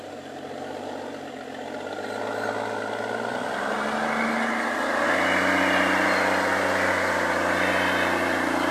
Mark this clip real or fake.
real